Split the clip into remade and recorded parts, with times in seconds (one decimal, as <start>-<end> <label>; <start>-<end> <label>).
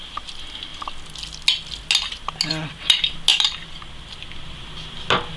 0.0-5.4 recorded